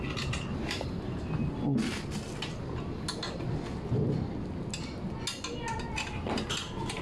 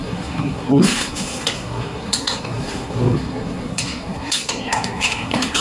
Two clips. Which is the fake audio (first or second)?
second